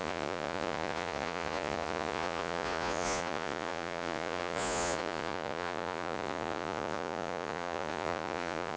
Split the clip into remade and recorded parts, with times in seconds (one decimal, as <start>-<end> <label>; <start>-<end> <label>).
0.0-8.8 remade